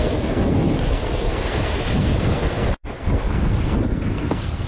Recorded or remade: remade